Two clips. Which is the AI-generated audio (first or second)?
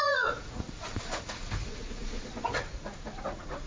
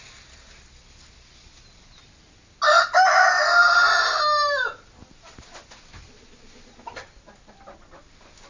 first